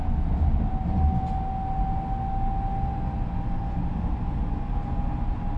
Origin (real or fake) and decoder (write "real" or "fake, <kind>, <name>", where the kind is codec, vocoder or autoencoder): real